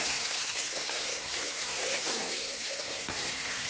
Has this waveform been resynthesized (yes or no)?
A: yes